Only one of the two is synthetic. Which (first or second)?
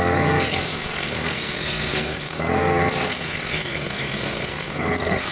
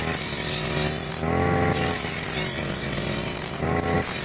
first